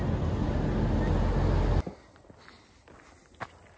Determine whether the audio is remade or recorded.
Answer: recorded